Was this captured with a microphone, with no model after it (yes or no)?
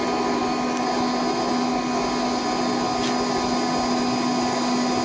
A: yes